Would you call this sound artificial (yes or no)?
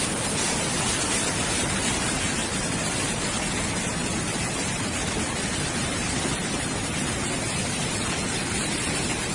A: no